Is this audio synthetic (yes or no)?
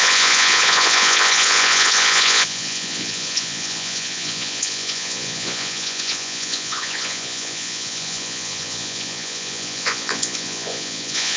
yes